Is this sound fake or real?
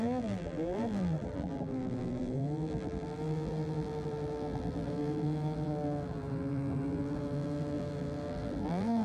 fake